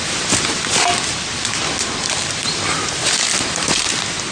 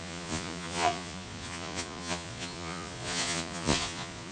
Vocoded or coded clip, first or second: second